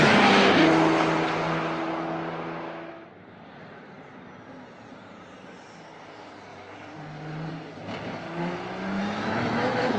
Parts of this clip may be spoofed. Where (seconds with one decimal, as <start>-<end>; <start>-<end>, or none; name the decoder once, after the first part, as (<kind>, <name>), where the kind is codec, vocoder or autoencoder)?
9.0-10.0 (autoencoder, DAC-VAE)